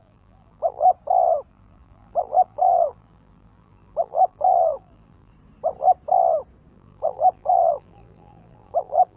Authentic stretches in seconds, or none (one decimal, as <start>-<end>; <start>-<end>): 0.9-1.5; 5.3-6.7